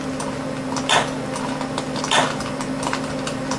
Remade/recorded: recorded